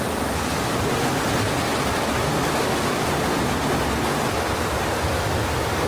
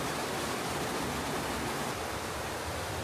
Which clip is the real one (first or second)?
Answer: first